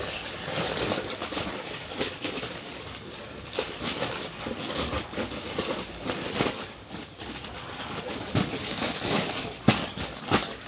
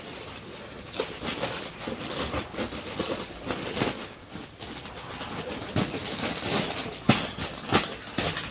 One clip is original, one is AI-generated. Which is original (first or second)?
second